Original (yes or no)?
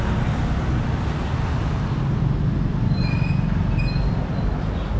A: yes